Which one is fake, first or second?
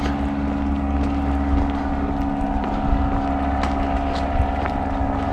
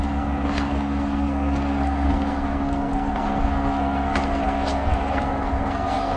second